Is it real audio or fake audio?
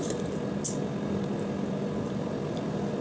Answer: real